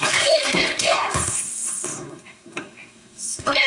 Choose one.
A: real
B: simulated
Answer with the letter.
B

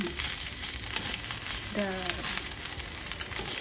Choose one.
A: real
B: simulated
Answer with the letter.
A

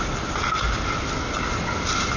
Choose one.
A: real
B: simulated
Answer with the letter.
A